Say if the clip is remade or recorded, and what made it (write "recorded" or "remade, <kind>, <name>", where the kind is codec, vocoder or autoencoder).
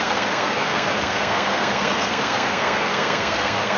remade, codec, SNAC